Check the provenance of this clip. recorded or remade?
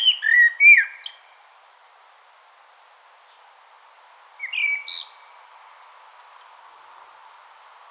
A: recorded